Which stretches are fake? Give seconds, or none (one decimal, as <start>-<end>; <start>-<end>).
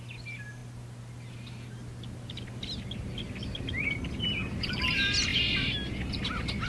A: none